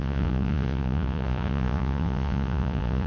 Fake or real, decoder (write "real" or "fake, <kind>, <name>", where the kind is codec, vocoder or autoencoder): fake, vocoder, Vocos